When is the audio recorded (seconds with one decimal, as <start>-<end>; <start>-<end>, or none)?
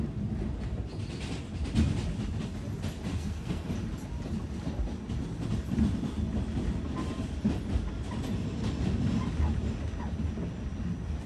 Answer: 0.0-3.1; 3.7-11.3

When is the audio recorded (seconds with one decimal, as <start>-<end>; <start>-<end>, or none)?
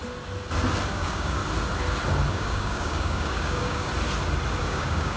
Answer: 0.0-0.9; 1.4-2.3; 3.9-4.6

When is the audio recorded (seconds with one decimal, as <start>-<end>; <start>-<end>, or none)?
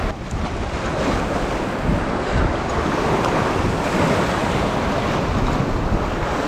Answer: 0.0-6.5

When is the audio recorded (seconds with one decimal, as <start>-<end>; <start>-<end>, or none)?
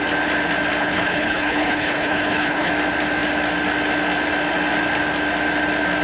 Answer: 0.0-0.8; 2.7-6.0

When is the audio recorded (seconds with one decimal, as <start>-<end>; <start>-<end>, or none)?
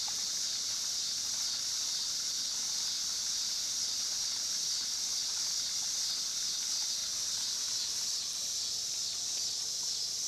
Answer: 0.0-10.3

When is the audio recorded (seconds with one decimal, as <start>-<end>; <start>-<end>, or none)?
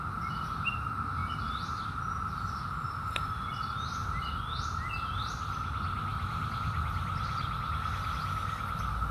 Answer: 0.0-6.1; 7.8-9.1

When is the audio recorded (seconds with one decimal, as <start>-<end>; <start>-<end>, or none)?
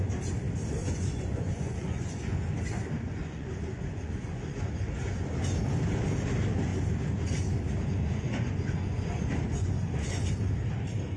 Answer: 0.0-0.8; 2.4-3.2; 4.7-7.9; 10.3-11.2